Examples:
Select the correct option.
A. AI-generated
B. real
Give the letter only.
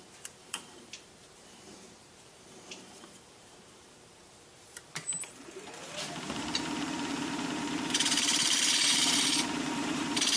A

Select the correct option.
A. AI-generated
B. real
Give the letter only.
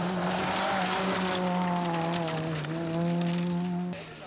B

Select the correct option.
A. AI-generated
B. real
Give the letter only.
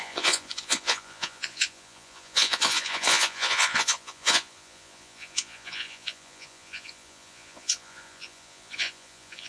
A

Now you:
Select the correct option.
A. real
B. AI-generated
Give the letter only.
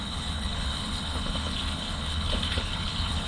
B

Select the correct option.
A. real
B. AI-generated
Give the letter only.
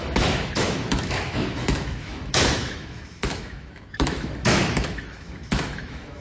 B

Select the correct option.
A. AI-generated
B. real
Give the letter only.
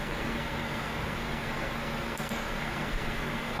A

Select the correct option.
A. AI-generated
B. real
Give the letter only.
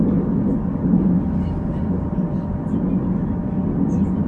B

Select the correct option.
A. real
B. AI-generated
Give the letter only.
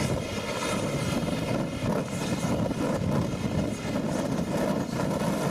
A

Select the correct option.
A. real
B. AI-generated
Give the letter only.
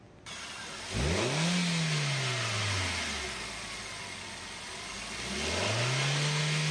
A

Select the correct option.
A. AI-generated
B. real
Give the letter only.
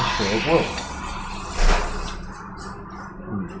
B